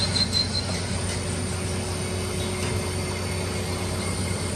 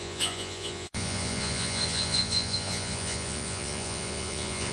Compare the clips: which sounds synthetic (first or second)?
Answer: second